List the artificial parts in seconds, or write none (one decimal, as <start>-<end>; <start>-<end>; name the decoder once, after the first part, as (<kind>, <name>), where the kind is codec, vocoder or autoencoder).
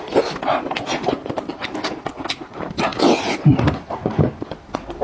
none